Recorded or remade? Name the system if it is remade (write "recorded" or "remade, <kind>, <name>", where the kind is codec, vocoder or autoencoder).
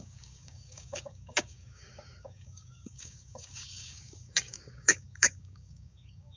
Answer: remade, codec, DAC